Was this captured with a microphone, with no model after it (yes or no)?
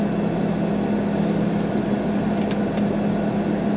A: yes